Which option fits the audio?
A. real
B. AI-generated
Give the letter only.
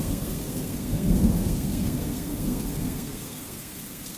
B